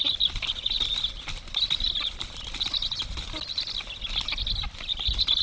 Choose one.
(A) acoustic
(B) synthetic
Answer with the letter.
A